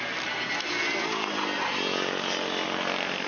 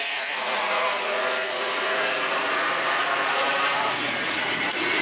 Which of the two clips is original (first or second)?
first